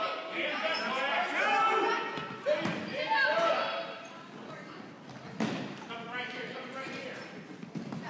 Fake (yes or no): no